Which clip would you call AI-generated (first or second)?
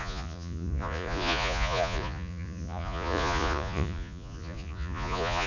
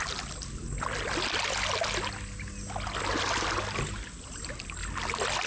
first